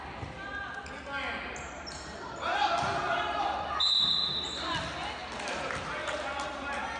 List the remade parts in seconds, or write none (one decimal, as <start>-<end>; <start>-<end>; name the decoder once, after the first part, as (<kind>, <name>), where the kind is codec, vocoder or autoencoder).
none

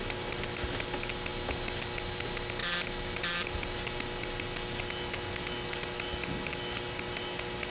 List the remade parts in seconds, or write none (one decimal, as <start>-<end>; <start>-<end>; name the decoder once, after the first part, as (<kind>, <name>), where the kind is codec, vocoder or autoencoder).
none

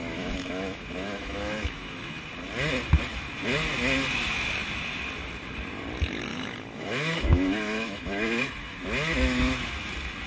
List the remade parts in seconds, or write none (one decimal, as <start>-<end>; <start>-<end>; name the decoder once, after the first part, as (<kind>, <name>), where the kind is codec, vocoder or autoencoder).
0.0-2.2 (autoencoder, DAC-VAE); 6.3-9.7

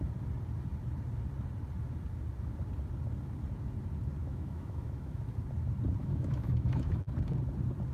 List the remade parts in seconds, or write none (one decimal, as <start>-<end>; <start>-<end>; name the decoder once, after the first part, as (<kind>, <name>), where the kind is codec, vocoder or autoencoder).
4.2-5.2 (autoencoder, DAC-VAE); 6.0-7.1

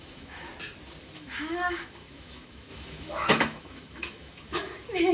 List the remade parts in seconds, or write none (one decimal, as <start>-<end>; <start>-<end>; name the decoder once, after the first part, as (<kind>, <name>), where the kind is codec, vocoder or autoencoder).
0.0-0.5 (autoencoder, DAC-VAE); 1.0-5.1